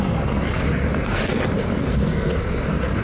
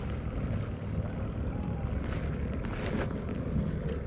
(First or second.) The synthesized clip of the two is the first